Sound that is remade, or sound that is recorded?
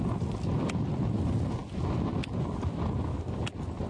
recorded